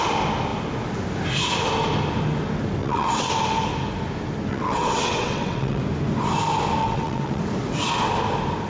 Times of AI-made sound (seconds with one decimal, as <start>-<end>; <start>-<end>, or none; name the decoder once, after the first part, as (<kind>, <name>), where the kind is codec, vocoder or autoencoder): 2.8-3.3 (vocoder, WaveNeXt); 4.5-5.8; 6.8-7.4